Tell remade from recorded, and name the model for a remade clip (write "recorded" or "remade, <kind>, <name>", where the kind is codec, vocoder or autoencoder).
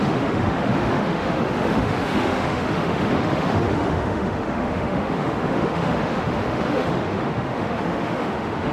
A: remade, autoencoder, DAC-VAE